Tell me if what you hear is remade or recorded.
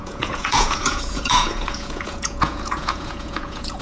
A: remade